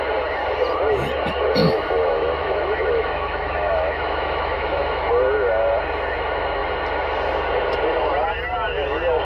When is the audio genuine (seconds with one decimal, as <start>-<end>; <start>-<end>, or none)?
0.0-1.6; 5.1-9.2